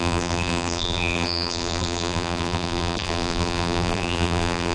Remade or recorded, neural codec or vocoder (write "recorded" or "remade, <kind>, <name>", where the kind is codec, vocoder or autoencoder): remade, vocoder, BigVGAN v2